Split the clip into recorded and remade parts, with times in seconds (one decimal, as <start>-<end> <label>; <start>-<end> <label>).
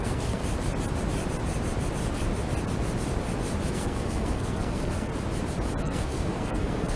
0.0-0.4 remade; 0.4-3.7 recorded; 3.7-5.1 remade; 5.1-5.8 recorded; 5.8-7.0 remade